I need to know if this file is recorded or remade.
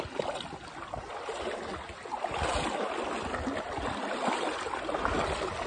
recorded